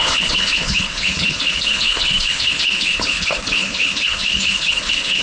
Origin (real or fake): fake